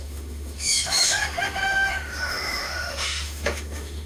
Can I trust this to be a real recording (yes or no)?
no